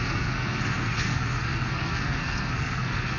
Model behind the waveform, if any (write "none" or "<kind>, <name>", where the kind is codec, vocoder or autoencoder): codec, SNAC